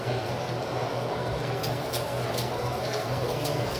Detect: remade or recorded remade